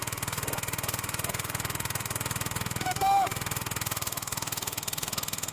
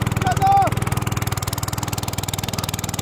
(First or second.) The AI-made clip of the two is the first